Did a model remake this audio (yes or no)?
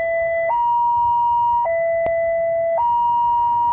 no